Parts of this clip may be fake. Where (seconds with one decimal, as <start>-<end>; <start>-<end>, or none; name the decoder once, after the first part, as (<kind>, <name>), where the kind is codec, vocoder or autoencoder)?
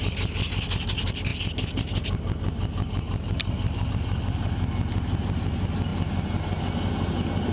none